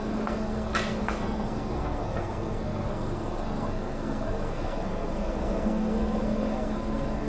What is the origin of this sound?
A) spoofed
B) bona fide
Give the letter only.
A